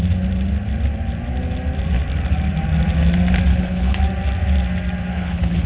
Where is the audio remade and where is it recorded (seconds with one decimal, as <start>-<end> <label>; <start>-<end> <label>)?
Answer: 0.0-3.5 recorded; 3.5-4.0 remade; 4.0-5.1 recorded; 5.1-5.7 remade